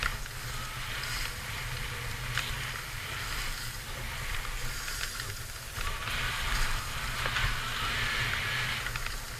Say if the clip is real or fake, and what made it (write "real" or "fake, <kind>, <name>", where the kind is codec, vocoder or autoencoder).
real